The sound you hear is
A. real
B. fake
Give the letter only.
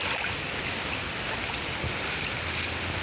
A